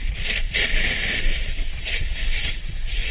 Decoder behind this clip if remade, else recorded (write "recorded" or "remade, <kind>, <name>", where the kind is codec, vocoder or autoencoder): recorded